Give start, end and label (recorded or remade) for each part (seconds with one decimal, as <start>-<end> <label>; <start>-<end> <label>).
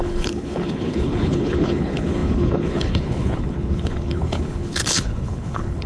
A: 0.0-5.9 remade